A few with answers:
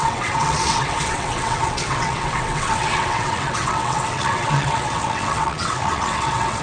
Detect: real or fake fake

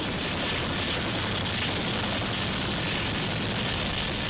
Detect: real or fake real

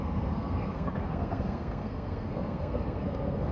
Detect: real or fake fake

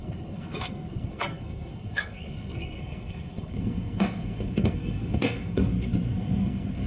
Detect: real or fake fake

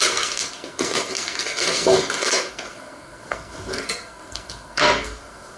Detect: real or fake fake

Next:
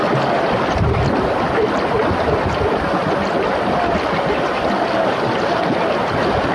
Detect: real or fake real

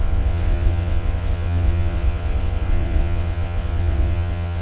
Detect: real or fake fake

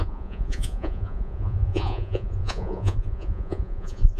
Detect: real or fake fake